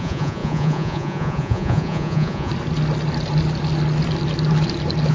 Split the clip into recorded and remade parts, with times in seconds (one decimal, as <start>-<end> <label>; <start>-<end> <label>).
0.0-2.5 remade; 2.5-5.1 recorded